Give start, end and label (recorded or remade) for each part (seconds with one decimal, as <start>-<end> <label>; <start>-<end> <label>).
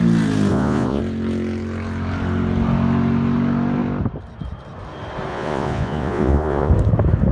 0.0-0.5 recorded; 0.5-1.0 remade; 1.0-5.3 recorded; 5.3-6.7 remade; 6.7-7.3 recorded